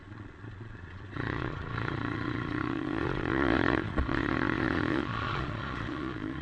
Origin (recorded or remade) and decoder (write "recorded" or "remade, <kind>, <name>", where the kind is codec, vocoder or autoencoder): remade, vocoder, Vocos